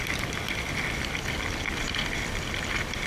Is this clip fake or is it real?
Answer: real